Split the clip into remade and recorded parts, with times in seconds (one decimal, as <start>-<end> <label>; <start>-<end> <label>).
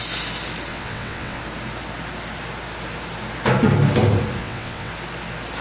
0.0-0.7 recorded; 0.7-1.4 remade; 1.4-4.4 recorded; 4.4-4.9 remade; 4.9-5.6 recorded